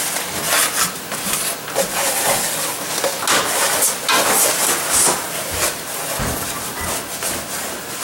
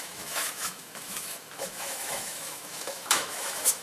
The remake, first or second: second